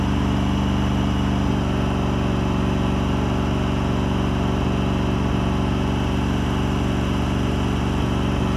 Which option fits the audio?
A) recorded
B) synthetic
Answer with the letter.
A